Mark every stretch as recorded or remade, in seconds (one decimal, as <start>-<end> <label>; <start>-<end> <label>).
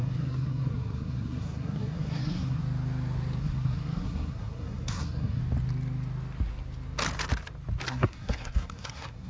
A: 0.0-2.6 remade; 2.6-3.4 recorded; 3.4-5.4 remade; 5.4-7.9 recorded; 7.9-9.3 remade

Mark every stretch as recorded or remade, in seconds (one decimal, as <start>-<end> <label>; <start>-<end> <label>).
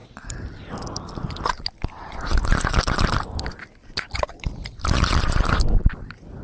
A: 0.0-6.4 recorded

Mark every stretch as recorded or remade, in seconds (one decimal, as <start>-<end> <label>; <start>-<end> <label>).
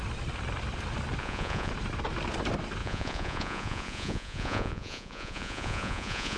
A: 0.0-1.2 recorded; 1.2-1.7 remade; 1.7-2.8 recorded; 2.8-6.4 remade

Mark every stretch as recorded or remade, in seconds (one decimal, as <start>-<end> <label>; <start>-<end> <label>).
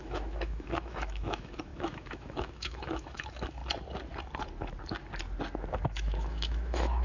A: 0.0-3.6 remade; 3.6-5.7 recorded; 5.7-7.0 remade